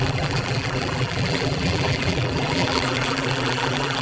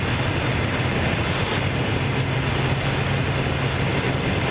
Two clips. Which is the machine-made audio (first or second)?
first